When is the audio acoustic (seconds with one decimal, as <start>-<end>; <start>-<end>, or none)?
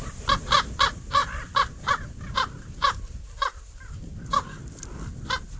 0.0-1.2; 4.6-5.6